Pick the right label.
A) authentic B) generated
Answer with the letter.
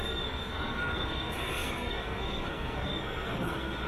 B